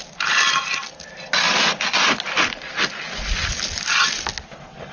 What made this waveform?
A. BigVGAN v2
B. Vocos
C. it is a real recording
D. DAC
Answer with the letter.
C